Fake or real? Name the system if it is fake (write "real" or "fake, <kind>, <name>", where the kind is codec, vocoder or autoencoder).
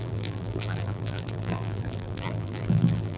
fake, vocoder, BigVGAN v2